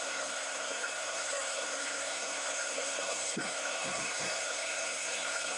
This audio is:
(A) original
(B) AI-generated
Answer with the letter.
B